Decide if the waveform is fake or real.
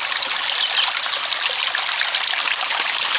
real